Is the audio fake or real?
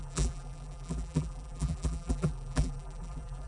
fake